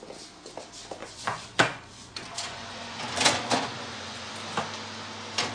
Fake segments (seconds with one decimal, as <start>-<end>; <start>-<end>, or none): 1.0-4.3